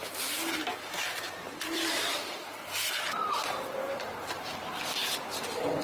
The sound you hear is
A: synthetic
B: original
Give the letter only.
A